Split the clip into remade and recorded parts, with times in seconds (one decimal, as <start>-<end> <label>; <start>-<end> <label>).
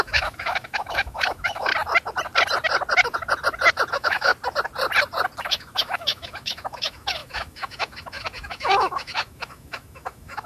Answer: 0.0-1.7 remade; 1.7-3.9 recorded; 3.9-4.3 remade; 4.3-5.4 recorded; 5.4-10.5 remade